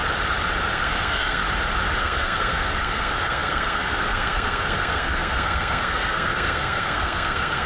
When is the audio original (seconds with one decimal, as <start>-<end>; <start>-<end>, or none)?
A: 0.0-0.7; 1.4-2.0